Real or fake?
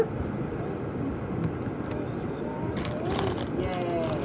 real